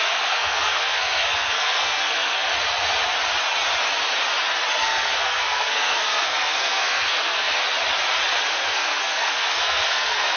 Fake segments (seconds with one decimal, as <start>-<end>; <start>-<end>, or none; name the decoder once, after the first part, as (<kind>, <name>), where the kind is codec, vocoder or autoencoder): 0.0-2.5 (codec, SNAC); 4.7-7.6; 8.5-10.4